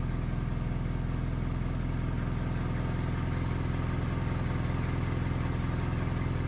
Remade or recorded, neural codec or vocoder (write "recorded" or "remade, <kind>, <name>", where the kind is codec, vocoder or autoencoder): recorded